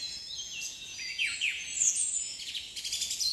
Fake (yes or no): yes